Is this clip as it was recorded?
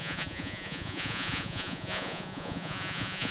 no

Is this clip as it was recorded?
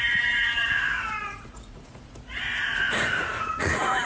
no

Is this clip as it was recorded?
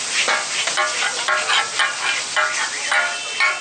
yes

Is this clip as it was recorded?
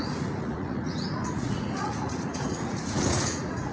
no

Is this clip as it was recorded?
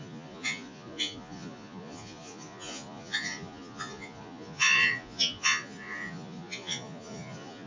no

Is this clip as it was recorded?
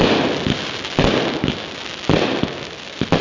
yes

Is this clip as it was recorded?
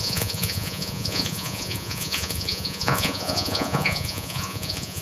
no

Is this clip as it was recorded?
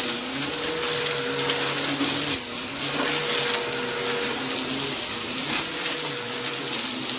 yes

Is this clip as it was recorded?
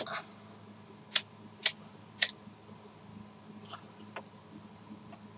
yes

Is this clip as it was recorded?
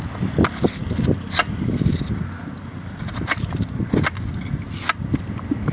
yes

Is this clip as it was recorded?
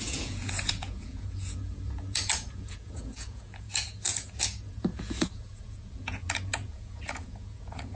no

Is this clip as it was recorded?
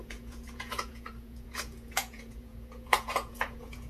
no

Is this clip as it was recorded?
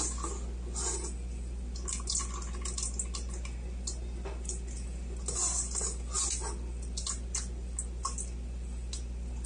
yes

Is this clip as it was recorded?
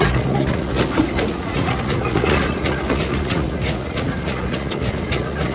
no